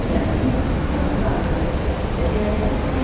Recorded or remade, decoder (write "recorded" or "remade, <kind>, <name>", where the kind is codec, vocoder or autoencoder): recorded